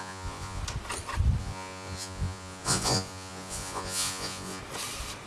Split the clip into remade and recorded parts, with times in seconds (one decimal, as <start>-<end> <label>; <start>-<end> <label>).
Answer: 0.0-0.6 remade; 0.6-1.4 recorded; 1.4-4.6 remade; 4.6-5.3 recorded